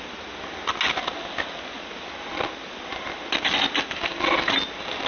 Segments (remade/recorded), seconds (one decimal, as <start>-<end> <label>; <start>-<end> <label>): 0.0-5.1 recorded